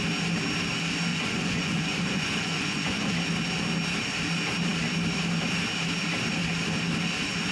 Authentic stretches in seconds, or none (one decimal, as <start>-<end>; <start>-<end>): 0.0-1.1; 3.1-7.5